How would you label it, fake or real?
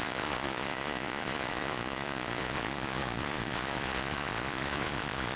fake